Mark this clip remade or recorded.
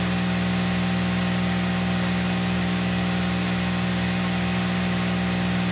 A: recorded